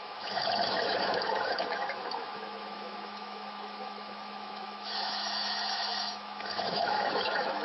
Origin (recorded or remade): remade